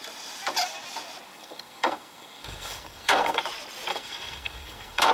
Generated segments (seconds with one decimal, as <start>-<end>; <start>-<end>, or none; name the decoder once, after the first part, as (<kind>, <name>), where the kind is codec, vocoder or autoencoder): 1.3-3.4 (codec, SNAC); 3.9-5.1